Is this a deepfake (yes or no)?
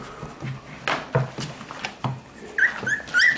no